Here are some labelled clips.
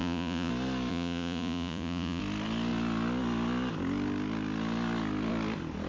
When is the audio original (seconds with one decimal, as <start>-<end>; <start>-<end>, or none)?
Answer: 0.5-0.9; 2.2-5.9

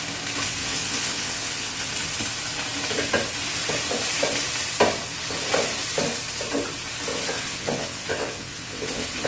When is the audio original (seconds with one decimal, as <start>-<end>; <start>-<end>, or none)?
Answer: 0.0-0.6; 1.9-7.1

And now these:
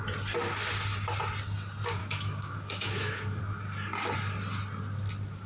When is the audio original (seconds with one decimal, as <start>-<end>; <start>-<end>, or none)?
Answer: 0.0-2.0; 3.4-5.5

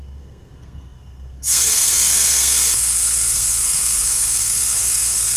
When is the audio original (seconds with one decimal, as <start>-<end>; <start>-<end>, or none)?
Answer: none